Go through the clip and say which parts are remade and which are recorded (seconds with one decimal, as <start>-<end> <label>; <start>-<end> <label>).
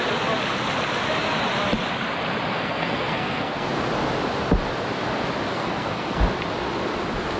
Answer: 0.0-2.5 recorded; 2.5-3.7 remade; 3.7-5.5 recorded; 5.5-6.2 remade; 6.2-7.4 recorded